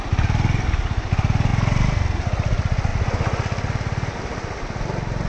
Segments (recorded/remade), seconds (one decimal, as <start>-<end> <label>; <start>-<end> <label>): 0.0-5.3 recorded